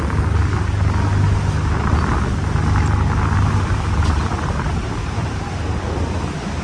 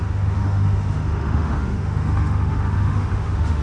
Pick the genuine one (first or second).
first